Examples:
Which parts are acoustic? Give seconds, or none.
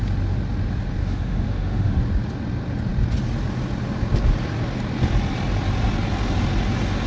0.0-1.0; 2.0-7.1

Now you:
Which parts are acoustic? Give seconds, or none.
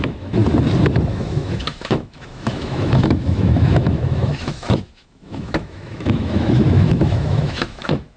0.4-1.1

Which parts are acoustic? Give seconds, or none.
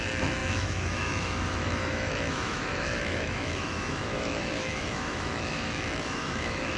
none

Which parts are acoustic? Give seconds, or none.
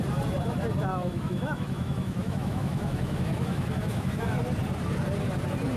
0.0-0.9; 4.4-5.8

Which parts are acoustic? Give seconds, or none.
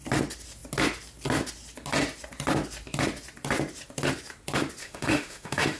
0.0-4.8